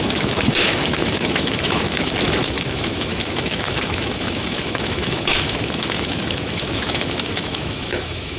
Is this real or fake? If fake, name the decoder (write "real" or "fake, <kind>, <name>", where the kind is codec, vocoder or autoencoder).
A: fake, autoencoder, DAC-VAE